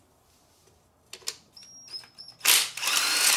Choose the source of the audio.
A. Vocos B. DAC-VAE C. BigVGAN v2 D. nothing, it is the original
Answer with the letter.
D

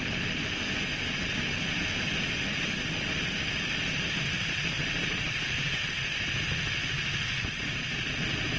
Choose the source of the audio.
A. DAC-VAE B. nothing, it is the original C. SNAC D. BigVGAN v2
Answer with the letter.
B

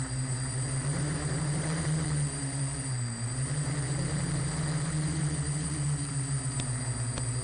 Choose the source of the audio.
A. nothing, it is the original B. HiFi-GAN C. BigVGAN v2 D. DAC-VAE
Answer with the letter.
C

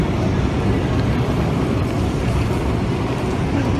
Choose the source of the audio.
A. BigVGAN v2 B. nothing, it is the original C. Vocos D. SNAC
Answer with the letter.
B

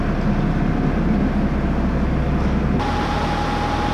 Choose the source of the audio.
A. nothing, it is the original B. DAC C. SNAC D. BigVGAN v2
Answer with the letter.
A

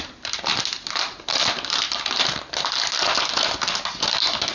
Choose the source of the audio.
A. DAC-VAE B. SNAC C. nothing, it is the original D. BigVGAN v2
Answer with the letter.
C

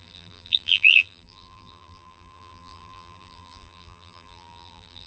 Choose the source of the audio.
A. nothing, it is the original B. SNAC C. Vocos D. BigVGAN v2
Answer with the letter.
D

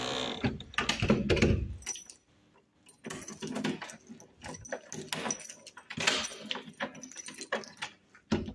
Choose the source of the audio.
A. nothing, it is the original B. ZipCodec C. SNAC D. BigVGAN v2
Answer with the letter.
A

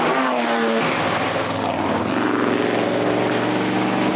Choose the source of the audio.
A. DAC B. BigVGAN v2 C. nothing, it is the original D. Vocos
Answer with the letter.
C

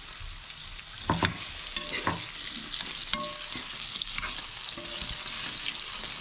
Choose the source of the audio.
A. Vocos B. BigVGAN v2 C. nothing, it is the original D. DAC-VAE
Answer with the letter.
C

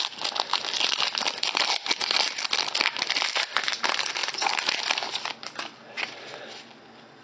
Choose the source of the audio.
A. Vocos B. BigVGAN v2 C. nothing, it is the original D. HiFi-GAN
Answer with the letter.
C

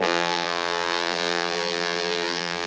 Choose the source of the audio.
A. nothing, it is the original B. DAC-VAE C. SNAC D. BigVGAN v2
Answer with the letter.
D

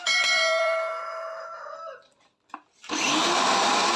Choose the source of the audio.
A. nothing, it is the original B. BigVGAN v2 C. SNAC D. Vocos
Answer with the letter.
B